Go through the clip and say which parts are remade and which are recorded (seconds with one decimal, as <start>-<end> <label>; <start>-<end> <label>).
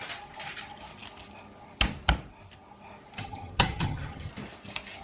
0.0-3.2 recorded; 3.2-4.3 remade; 4.3-5.0 recorded